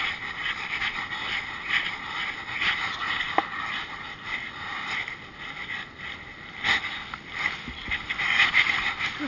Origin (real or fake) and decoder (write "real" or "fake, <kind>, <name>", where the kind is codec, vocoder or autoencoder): real